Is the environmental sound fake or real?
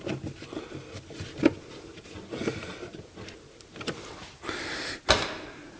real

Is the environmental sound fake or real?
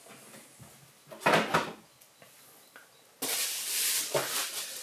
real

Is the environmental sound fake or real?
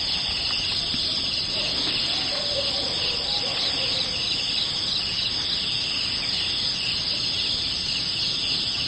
real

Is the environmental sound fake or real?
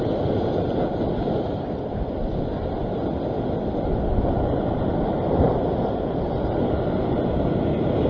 real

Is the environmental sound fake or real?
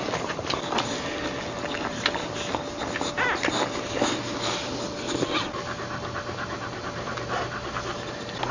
real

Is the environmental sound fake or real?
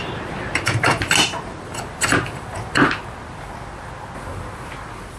real